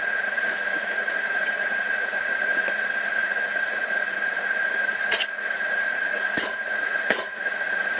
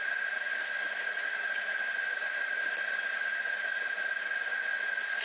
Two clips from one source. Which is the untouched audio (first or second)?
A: second